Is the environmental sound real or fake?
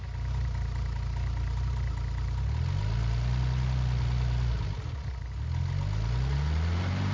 real